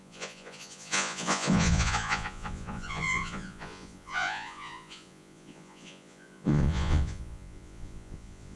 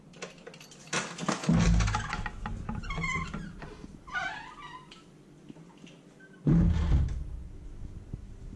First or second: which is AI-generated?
first